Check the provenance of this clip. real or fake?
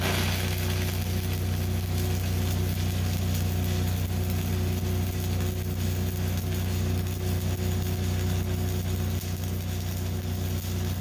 real